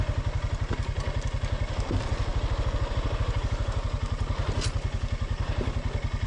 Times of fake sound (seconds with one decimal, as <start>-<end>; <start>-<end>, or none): none